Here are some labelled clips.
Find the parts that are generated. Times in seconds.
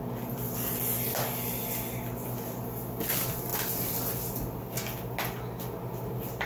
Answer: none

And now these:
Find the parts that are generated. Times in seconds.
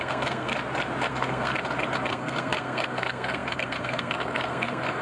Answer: 0.0-0.5; 1.1-1.5; 2.1-5.0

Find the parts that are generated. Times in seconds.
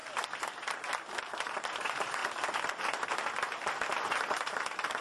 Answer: 1.2-2.2; 4.3-5.0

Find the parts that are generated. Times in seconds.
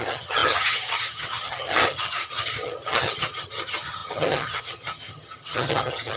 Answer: 0.0-6.2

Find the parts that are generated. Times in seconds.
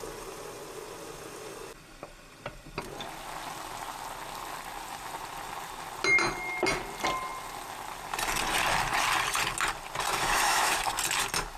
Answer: 10.1-10.9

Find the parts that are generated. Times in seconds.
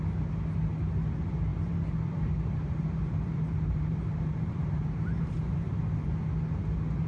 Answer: 1.5-5.8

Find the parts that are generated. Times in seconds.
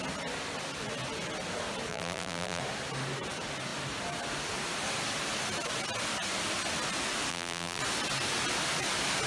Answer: 1.9-2.6; 7.3-7.8